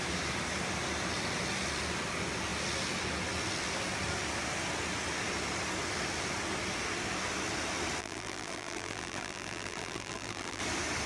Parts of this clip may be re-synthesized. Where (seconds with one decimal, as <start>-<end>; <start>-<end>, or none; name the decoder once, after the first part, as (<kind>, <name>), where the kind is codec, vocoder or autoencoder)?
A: 8.0-10.6 (vocoder, BigVGAN v2)